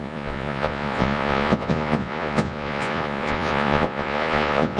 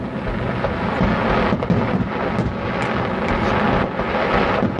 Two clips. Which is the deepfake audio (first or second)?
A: first